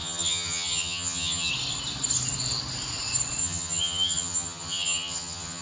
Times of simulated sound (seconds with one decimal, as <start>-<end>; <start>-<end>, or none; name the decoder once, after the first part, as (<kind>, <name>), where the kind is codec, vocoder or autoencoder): 0.0-1.5 (vocoder, HiFi-GAN); 3.4-5.6